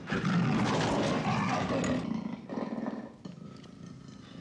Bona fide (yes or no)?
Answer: yes